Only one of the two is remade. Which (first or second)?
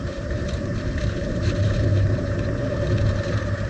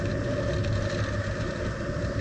first